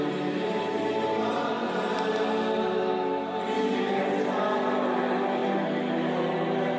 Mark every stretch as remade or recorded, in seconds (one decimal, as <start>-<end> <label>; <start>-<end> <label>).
0.0-6.8 recorded